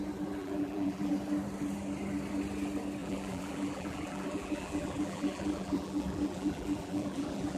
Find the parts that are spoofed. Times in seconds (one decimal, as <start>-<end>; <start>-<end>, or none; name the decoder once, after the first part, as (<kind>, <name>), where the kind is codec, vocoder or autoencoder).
0.4-1.1 (vocoder, BigVGAN v2); 3.0-7.6